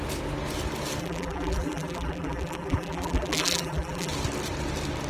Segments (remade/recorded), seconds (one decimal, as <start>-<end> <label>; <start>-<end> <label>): 0.0-1.0 recorded; 1.0-4.1 remade; 4.1-5.1 recorded